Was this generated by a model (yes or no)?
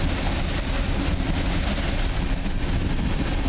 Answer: no